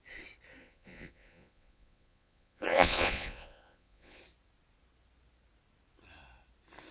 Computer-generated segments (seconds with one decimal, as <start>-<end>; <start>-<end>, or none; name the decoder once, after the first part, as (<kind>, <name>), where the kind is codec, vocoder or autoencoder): 0.6-4.2 (vocoder, Vocos)